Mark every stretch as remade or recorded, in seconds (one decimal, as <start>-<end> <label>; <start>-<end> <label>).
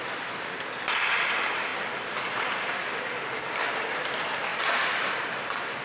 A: 0.0-5.8 recorded